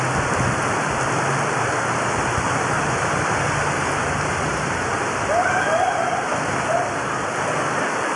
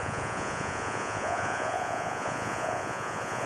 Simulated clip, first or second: second